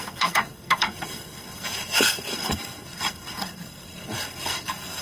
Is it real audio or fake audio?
fake